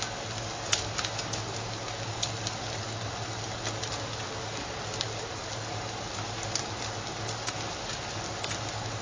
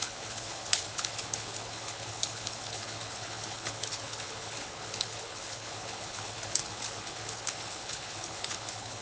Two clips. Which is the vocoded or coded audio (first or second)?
second